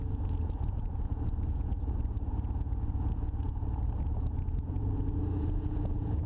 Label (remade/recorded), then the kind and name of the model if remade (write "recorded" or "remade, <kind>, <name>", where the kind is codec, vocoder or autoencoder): remade, vocoder, Vocos